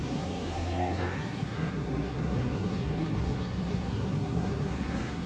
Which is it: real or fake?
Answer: fake